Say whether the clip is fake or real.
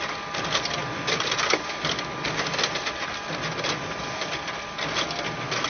real